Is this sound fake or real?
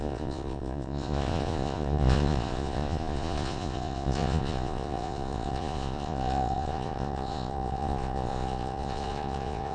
fake